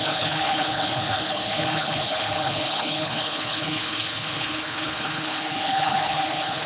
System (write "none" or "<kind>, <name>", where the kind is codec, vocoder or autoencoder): codec, HILCodec